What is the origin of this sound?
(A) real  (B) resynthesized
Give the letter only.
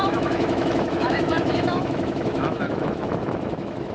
B